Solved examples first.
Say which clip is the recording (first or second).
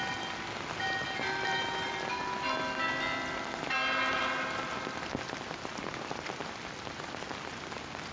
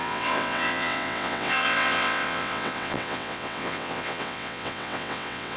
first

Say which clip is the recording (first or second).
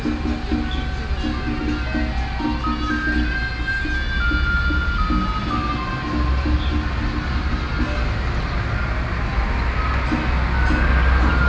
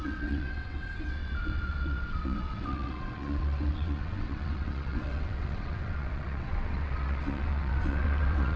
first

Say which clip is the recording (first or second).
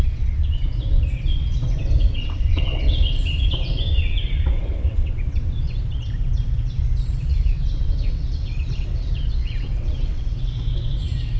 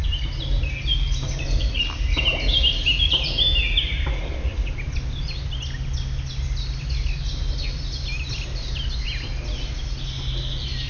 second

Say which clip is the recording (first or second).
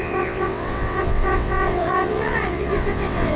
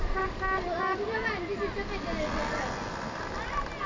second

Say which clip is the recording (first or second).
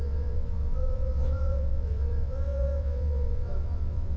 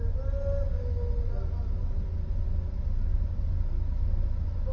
second